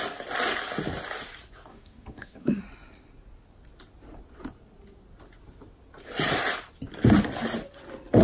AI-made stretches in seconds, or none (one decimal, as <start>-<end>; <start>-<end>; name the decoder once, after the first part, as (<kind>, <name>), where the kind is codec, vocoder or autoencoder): 1.7-2.6 (codec, SNAC)